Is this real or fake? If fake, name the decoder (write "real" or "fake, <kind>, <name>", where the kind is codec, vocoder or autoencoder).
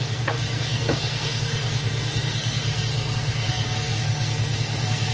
fake, codec, SNAC